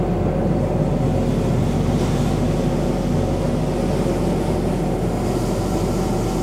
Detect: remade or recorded recorded